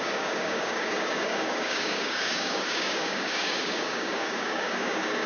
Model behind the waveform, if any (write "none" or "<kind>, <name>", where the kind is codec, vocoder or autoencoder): codec, DAC